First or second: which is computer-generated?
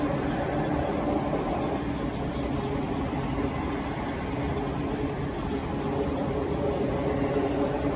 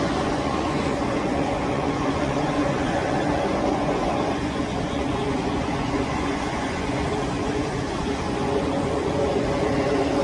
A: second